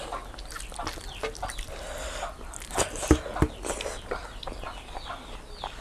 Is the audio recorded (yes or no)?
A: yes